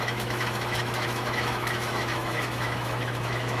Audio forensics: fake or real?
fake